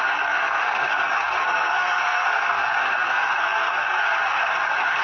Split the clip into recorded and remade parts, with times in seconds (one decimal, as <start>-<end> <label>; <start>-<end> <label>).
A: 0.0-5.0 remade

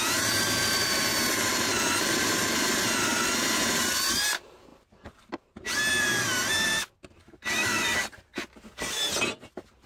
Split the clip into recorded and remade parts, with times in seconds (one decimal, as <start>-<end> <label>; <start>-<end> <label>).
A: 0.0-1.1 remade; 1.1-2.0 recorded; 2.0-8.3 remade; 8.3-9.4 recorded; 9.4-9.9 remade

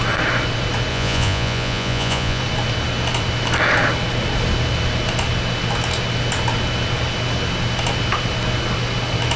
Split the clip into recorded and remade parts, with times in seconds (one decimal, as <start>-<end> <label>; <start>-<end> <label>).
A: 0.0-0.9 recorded; 0.9-2.4 remade; 2.4-9.4 recorded

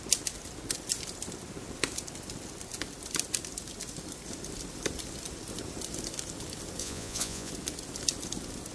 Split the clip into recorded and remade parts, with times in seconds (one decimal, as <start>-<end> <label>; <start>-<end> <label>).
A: 0.0-6.8 recorded; 6.8-7.5 remade; 7.5-8.7 recorded

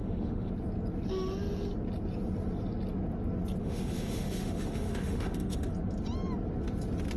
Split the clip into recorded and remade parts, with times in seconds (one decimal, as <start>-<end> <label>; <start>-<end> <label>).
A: 0.0-0.5 remade; 0.5-3.6 recorded; 3.6-5.7 remade; 5.7-7.2 recorded

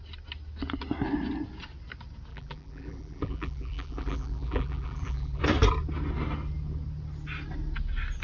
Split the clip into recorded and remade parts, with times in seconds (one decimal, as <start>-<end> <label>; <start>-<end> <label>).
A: 0.0-2.3 recorded; 2.3-5.4 remade; 5.4-8.2 recorded

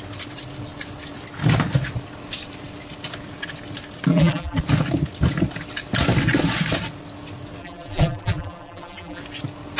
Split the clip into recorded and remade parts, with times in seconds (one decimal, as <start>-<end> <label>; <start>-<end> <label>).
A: 0.0-4.1 recorded; 4.1-4.6 remade; 4.6-7.6 recorded; 7.6-9.2 remade; 9.2-9.8 recorded